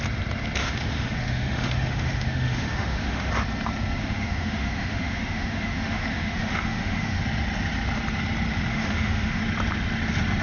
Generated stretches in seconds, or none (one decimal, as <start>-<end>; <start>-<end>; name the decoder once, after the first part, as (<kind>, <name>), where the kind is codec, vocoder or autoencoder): 0.6-3.3 (autoencoder, DAC-VAE); 4.0-7.2; 8.7-9.4